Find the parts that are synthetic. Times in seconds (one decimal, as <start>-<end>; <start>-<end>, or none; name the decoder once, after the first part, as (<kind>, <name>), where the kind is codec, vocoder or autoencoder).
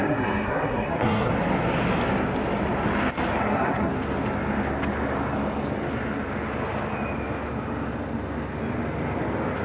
0.0-1.3 (codec, SNAC); 3.4-3.9